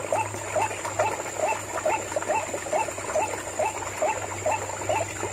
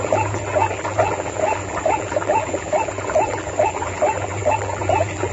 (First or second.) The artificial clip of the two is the second